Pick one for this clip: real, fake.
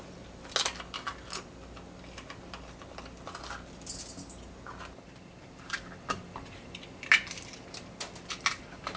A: real